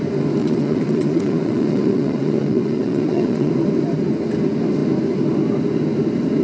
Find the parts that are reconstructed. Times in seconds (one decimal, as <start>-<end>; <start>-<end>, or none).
0.4-3.5

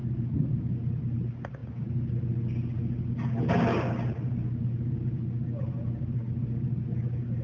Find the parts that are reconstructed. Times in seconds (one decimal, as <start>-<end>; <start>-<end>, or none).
none

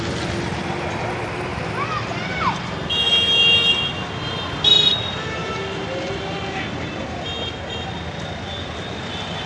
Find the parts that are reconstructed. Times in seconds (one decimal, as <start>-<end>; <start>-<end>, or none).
none

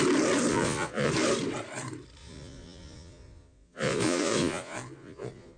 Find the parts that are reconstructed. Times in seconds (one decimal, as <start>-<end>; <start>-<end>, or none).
0.5-1.1; 2.2-5.6

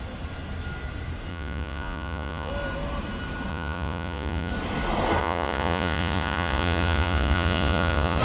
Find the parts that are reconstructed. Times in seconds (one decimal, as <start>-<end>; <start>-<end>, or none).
1.3-2.5; 3.5-4.5; 5.2-8.2